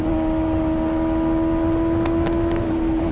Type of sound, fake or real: real